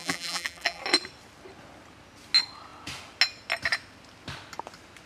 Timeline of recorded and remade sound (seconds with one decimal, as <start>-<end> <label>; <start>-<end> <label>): 0.0-0.8 remade; 0.8-5.1 recorded